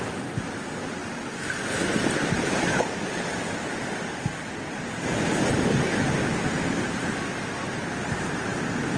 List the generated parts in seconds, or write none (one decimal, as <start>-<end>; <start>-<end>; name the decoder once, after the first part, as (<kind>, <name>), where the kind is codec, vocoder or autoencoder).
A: none